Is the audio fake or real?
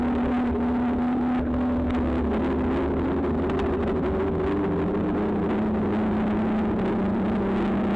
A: real